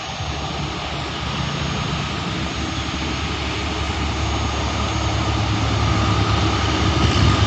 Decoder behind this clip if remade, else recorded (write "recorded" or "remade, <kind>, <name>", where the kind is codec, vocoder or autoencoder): recorded